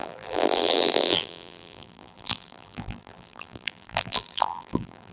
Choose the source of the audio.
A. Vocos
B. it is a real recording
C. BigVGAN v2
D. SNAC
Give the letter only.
C